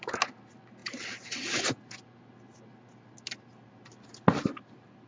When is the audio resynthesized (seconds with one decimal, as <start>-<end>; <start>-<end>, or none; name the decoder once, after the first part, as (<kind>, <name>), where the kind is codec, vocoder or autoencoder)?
none